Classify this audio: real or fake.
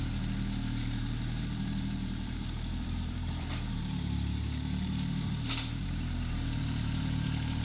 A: fake